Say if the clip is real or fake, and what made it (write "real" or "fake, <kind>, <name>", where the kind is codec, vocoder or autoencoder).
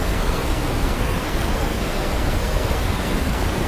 fake, codec, SNAC